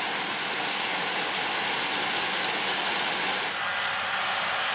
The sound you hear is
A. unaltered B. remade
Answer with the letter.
A